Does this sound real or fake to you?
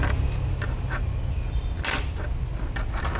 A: real